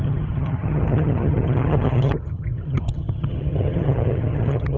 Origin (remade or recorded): remade